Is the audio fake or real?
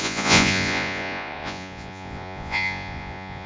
fake